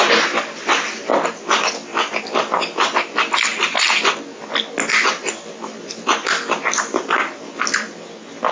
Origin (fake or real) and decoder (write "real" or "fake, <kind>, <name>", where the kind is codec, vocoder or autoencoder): real